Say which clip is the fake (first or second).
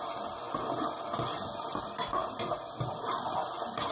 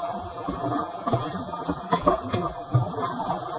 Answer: second